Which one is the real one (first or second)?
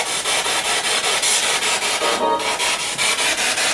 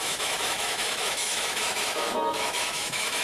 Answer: first